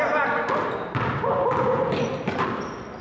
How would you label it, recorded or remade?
recorded